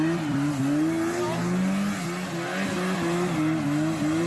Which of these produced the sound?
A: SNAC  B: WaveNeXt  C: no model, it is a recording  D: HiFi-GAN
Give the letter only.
C